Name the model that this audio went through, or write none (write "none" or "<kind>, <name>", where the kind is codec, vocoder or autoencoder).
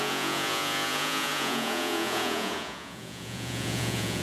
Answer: vocoder, Vocos